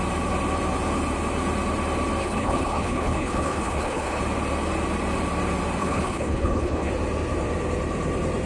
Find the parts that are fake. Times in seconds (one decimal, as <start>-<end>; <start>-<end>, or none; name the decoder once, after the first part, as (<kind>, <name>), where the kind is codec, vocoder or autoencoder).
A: 2.2-4.2 (codec, HILCodec); 5.8-6.9

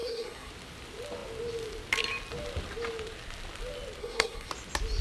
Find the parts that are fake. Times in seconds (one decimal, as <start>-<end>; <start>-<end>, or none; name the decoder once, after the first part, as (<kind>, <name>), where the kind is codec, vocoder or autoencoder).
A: 0.0-0.5 (codec, SNAC); 4.0-4.5

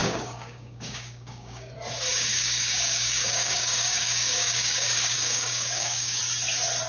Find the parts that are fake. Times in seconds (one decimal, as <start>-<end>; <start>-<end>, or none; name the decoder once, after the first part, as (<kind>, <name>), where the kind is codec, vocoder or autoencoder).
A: 0.0-1.7 (codec, DAC); 2.1-6.2